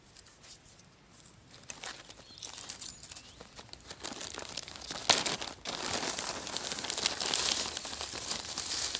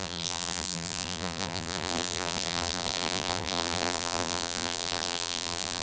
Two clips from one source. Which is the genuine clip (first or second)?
first